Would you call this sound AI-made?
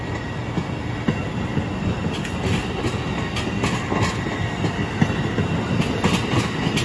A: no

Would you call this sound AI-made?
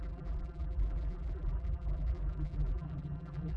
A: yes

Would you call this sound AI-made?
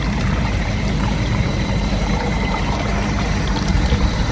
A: yes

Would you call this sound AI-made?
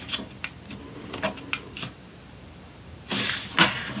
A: no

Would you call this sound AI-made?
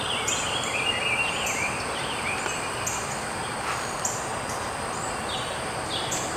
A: no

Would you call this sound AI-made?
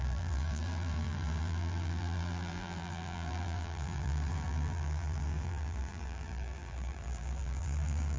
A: yes